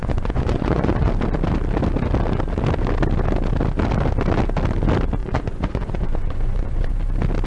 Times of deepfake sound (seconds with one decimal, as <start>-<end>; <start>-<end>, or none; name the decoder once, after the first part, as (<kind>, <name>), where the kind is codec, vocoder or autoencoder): 0.0-1.1 (vocoder, Vocos); 5.2-6.9